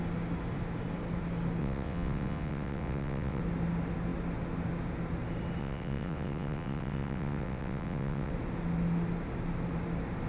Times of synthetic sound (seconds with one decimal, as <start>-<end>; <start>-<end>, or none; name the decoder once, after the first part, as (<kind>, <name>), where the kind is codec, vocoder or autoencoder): 1.6-3.4 (vocoder, WaveNeXt); 5.6-8.3